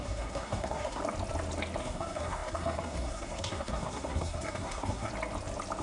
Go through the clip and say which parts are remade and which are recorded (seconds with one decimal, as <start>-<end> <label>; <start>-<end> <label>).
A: 0.0-1.0 remade; 1.0-1.8 recorded; 1.8-5.1 remade; 5.1-5.8 recorded